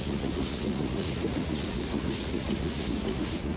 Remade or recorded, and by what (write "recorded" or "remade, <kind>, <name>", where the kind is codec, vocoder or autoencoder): remade, vocoder, Vocos